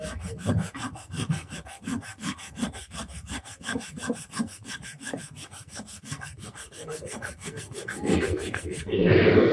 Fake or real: fake